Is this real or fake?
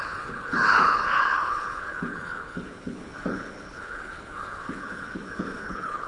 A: fake